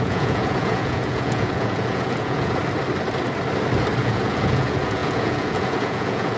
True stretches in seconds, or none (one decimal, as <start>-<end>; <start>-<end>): 2.6-4.0